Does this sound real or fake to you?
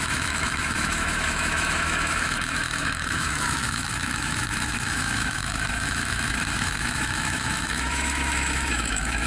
fake